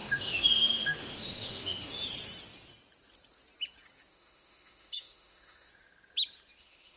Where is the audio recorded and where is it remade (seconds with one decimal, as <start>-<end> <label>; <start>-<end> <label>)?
0.0-2.0 remade; 2.0-4.1 recorded; 4.1-5.7 remade; 5.7-6.6 recorded; 6.6-7.0 remade